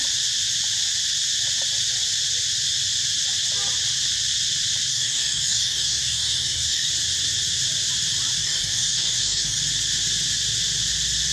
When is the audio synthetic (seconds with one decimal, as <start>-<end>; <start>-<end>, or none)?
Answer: 4.9-6.9; 8.4-9.6